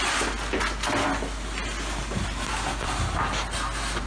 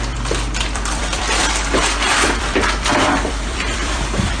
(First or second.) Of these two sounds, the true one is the first